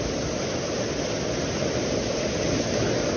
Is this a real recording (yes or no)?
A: yes